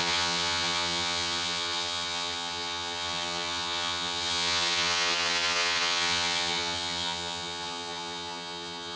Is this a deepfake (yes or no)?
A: yes